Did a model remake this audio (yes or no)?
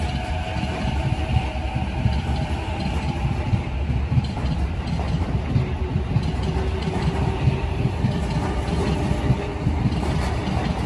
yes